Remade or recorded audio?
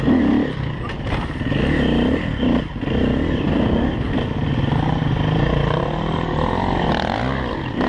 recorded